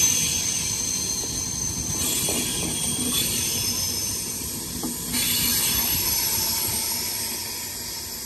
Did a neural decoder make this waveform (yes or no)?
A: no